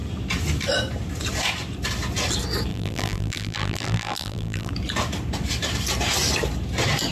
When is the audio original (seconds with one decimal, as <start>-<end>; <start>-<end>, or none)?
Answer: 0.0-2.7; 4.7-7.1